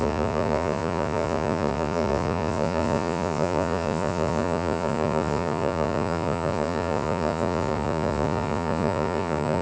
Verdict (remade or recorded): remade